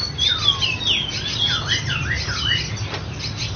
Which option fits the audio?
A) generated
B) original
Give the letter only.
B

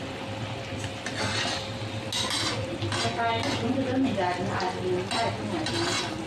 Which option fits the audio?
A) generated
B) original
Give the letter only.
B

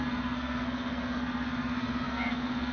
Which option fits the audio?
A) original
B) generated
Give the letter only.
B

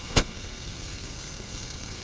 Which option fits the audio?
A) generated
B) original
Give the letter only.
A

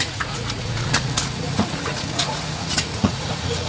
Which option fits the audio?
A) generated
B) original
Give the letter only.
A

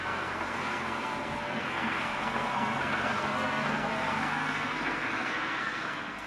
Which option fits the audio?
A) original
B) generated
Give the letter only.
B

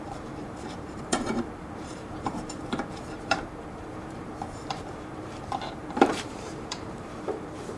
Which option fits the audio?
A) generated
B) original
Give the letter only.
A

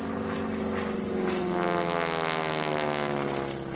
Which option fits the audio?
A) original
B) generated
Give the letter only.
A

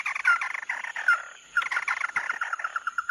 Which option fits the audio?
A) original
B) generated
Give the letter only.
A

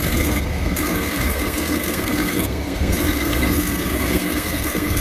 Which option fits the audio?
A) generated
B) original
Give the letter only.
A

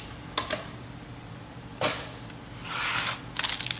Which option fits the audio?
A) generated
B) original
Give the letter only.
B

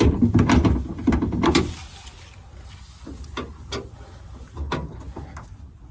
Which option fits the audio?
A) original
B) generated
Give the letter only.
A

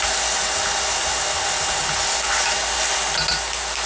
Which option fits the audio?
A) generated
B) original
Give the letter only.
B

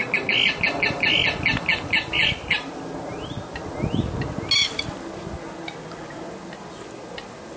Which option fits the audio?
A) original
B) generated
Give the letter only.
A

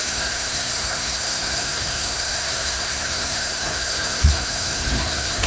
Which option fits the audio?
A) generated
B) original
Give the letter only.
A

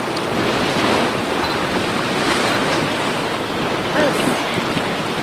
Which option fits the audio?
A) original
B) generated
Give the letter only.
A